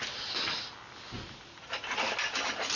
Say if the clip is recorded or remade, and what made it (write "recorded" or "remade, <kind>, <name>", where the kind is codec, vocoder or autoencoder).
recorded